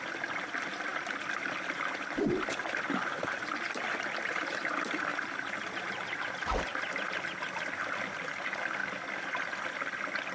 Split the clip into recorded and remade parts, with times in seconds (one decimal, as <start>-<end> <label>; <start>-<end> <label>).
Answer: 0.0-10.3 remade